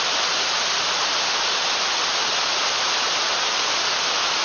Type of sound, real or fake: real